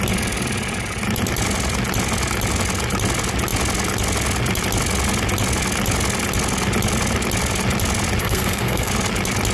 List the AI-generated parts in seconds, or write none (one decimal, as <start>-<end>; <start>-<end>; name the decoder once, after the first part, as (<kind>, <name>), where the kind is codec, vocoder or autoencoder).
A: 8.2-8.9 (codec, SNAC)